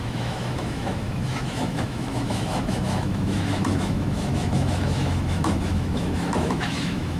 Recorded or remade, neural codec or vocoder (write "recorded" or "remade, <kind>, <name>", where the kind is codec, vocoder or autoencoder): remade, autoencoder, DAC-VAE